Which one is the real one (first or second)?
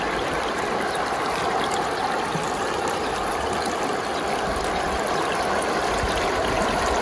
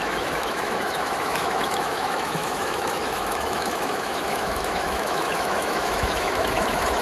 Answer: first